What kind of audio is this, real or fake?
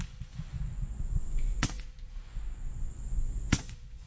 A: fake